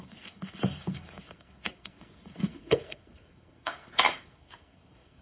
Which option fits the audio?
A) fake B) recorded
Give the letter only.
A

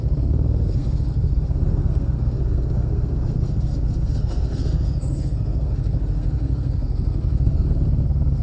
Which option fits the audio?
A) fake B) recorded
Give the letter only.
A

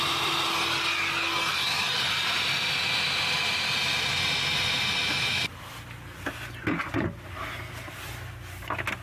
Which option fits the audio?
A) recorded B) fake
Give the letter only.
A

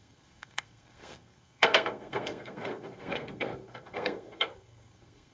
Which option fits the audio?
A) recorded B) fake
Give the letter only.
B